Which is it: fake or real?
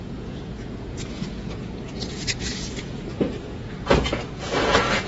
fake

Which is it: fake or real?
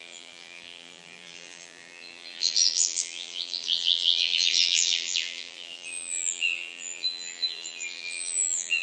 fake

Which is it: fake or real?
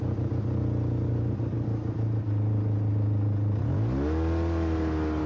real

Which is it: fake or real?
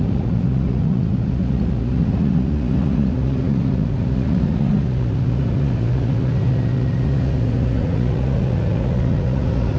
fake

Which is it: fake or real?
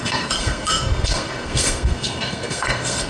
fake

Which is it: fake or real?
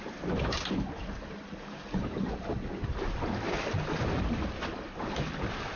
real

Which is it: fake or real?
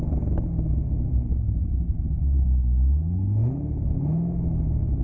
real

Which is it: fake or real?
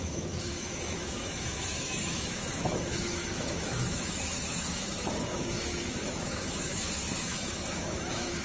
fake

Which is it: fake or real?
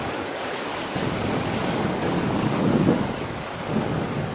fake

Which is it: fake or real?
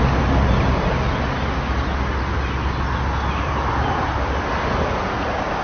real